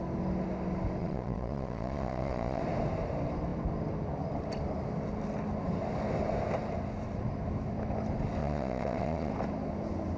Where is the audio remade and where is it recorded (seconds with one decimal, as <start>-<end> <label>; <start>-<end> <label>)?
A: 0.0-1.0 recorded; 1.0-2.6 remade; 2.6-8.4 recorded; 8.4-9.3 remade; 9.3-10.2 recorded